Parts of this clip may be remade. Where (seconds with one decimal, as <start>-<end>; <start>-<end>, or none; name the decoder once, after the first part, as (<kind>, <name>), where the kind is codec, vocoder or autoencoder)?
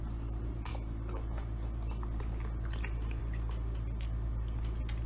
none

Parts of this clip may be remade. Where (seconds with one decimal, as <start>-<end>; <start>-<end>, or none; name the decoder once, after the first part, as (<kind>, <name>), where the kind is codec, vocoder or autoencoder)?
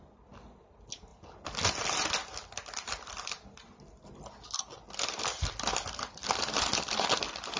none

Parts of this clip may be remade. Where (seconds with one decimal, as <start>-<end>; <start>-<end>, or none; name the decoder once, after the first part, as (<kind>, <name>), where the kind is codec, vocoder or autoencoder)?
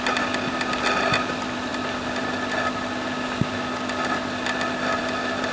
none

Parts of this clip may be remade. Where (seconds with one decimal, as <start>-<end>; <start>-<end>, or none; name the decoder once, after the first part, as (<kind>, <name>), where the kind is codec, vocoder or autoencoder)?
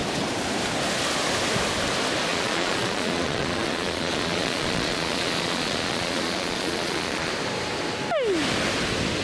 2.3-7.3 (vocoder, Vocos)